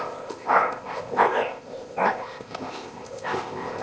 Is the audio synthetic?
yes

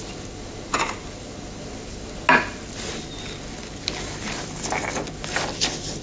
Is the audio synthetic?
no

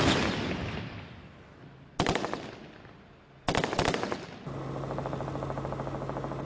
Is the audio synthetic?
no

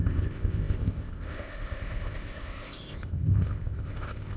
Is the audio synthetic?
yes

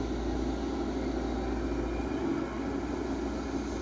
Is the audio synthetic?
no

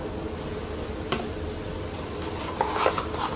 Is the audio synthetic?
no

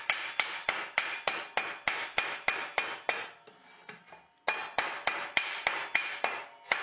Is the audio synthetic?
no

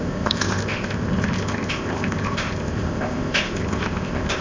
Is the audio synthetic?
yes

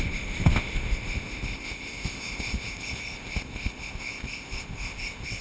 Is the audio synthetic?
yes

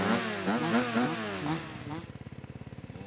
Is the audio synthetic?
no